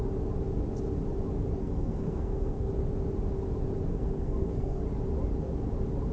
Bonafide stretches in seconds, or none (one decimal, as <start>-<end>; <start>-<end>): 0.0-1.6; 2.7-3.9; 4.8-6.1